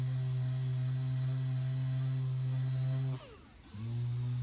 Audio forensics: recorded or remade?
recorded